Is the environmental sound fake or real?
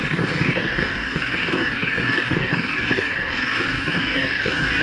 fake